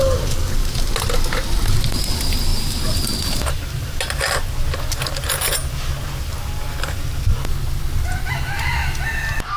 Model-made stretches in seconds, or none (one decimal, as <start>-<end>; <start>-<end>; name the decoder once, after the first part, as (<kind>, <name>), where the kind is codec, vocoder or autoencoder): none